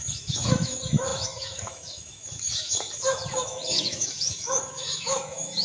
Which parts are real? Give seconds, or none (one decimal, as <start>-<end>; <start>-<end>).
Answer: none